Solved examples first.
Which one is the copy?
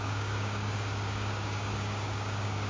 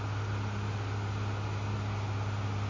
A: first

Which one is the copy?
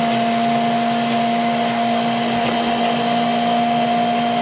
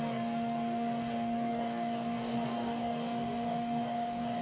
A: second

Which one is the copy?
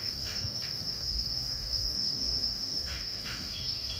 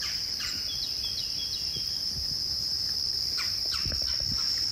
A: first